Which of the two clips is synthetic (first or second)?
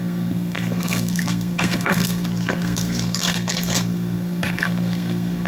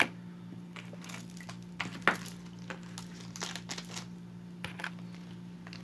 first